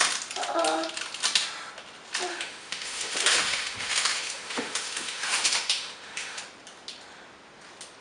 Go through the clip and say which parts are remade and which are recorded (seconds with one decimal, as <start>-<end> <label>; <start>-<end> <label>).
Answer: 0.0-2.3 recorded; 2.3-6.4 remade; 6.4-8.0 recorded